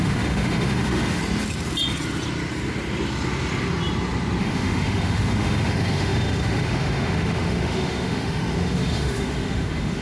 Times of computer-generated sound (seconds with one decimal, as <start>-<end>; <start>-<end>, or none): 0.0-1.2; 4.4-10.0